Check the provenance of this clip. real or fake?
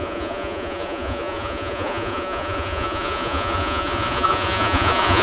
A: fake